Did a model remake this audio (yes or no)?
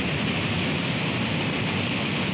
no